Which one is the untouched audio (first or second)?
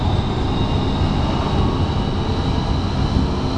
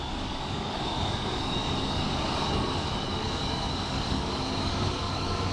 first